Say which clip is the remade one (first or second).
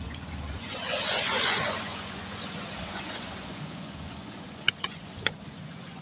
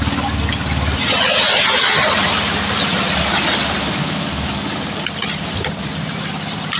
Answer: first